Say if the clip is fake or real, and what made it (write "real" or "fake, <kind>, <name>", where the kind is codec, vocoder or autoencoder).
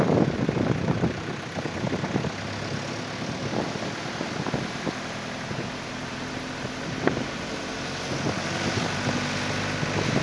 real